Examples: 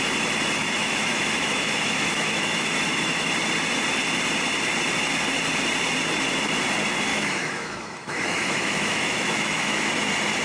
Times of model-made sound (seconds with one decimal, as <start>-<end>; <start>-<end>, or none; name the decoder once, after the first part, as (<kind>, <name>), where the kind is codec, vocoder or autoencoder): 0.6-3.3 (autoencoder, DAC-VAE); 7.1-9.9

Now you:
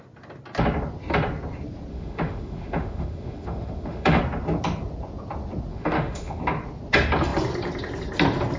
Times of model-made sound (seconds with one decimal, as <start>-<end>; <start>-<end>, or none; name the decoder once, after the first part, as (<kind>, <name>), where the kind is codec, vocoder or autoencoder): 1.9-4.2 (autoencoder, DAC-VAE); 5.7-6.4

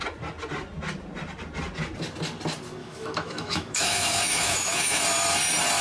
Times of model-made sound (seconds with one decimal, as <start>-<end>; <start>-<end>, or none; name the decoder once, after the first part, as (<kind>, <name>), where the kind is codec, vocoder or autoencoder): 2.8-5.0 (autoencoder, DAC-VAE)

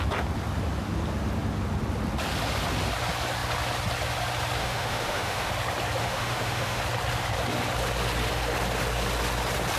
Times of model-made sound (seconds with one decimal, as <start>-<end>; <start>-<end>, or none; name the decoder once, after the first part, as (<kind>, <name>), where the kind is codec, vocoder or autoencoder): 4.6-5.5 (autoencoder, DAC-VAE); 6.0-6.8

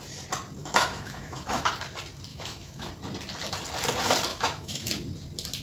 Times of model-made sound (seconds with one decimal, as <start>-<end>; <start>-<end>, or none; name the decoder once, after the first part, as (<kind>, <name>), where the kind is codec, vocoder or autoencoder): 0.6-1.7 (autoencoder, DAC-VAE); 2.3-2.9; 4.3-4.9